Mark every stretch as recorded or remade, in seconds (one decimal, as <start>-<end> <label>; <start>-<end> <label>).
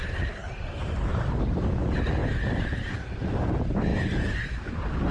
0.0-1.1 recorded; 1.1-1.6 remade; 1.6-3.9 recorded; 3.9-4.6 remade; 4.6-5.1 recorded